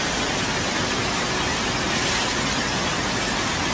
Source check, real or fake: real